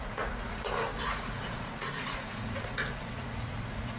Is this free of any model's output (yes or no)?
no